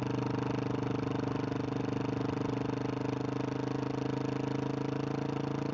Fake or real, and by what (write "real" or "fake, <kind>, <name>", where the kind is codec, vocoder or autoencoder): real